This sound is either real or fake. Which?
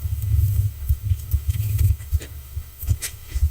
fake